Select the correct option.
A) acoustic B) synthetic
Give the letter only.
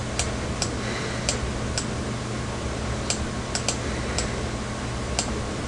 A